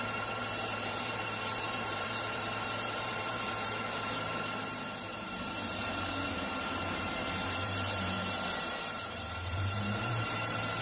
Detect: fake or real fake